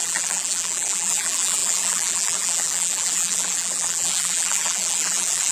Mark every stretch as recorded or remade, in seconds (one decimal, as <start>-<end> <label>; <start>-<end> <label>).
0.0-5.5 remade